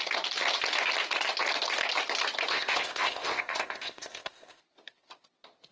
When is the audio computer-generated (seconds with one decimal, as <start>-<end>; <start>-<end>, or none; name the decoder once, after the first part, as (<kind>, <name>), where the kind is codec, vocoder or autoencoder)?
2.5-4.6 (codec, ZipCodec)